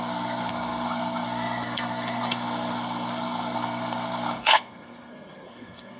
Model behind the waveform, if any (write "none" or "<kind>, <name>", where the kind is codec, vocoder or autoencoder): codec, SNAC